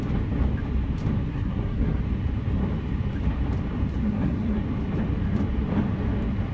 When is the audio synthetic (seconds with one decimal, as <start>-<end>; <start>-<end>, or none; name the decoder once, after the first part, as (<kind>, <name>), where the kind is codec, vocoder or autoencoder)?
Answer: 1.3-2.0 (codec, SNAC); 3.9-4.6